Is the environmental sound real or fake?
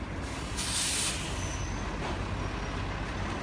real